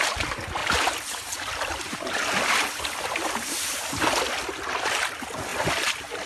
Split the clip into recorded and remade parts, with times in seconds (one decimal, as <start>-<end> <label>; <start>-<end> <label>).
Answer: 0.0-0.6 recorded; 0.6-4.0 remade; 4.0-6.3 recorded